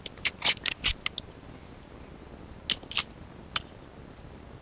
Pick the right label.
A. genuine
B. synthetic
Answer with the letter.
A